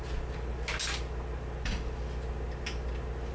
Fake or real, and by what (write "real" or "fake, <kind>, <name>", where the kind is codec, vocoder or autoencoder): real